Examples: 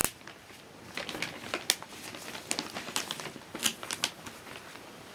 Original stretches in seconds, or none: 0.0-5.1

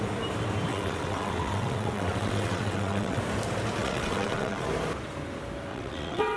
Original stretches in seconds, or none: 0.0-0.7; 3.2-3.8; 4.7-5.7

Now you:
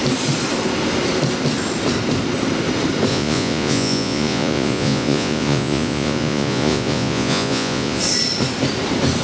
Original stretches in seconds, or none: 0.0-3.1; 8.0-9.2